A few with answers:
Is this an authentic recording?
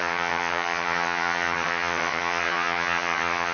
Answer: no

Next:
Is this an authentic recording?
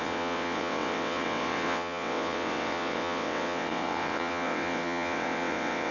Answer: no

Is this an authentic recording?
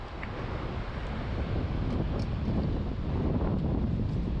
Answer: yes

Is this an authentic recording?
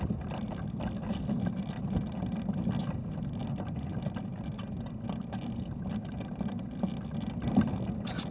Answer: yes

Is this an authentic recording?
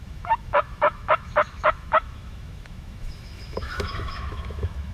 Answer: no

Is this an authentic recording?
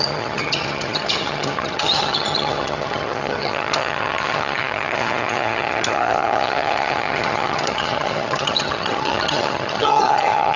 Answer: no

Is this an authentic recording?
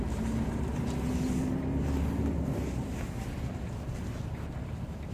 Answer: yes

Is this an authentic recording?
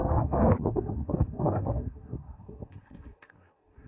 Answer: no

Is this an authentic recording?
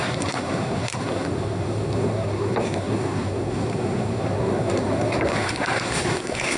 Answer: no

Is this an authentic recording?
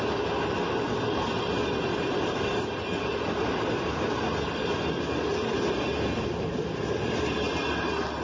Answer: yes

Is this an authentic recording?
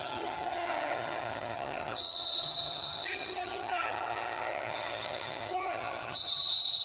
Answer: no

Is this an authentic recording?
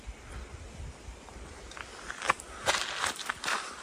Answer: yes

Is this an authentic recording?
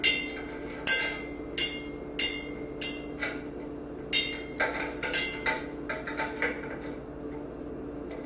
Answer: yes